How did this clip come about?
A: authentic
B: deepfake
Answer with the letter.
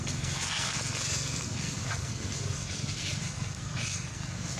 B